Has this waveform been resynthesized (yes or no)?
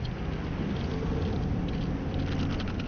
no